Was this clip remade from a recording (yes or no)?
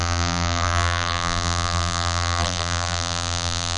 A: yes